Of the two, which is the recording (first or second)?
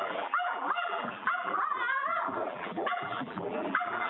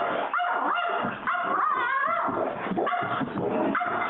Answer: second